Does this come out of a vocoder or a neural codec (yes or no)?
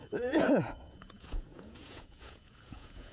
yes